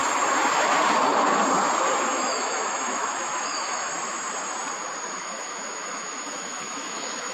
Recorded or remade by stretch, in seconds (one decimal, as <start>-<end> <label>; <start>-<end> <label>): 0.0-2.1 recorded; 2.1-3.9 remade; 3.9-5.2 recorded; 5.2-7.3 remade